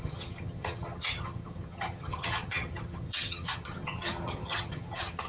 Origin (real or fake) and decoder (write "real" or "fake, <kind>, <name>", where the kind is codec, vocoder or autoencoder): fake, vocoder, HiFi-GAN